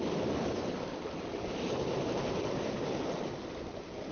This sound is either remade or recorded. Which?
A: recorded